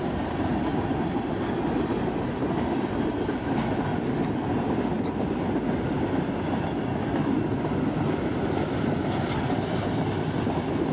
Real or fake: real